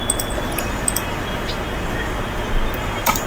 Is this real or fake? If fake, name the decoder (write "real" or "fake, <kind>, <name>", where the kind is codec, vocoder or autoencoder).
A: real